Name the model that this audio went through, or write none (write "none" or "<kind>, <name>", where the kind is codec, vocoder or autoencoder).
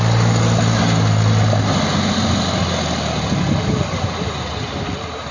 none